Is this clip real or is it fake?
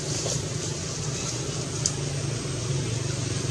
real